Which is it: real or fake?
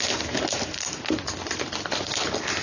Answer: real